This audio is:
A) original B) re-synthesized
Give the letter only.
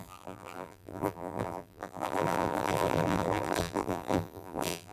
B